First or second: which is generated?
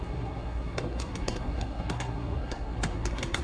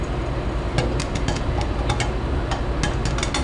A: first